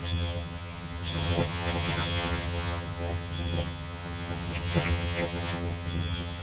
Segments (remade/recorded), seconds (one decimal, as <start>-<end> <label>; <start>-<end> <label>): 0.0-6.4 remade